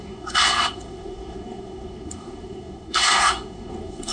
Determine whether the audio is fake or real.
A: fake